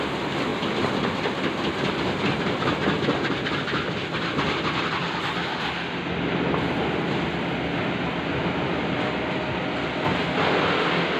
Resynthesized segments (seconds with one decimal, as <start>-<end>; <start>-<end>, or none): none